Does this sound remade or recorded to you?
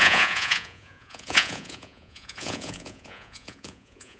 remade